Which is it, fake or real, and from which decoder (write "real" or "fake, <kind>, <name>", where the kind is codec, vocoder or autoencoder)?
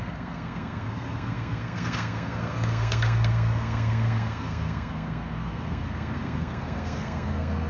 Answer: fake, codec, SNAC